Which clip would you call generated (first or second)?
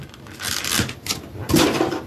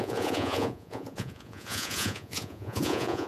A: second